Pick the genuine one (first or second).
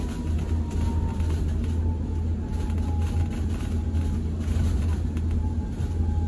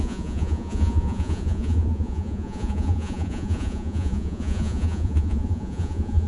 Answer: first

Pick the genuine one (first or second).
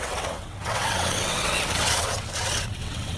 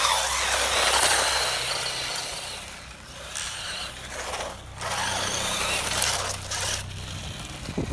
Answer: second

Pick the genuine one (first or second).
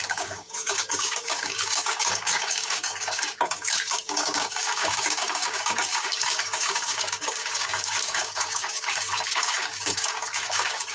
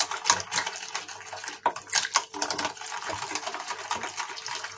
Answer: second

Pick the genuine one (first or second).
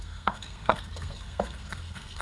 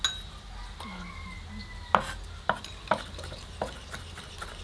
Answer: second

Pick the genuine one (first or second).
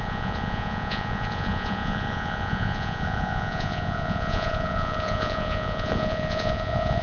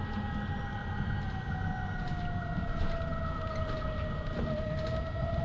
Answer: second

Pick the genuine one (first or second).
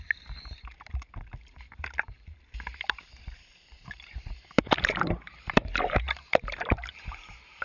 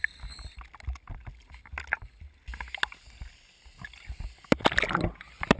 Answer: second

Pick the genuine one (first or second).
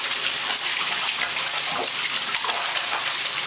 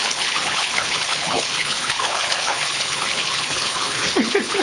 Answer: first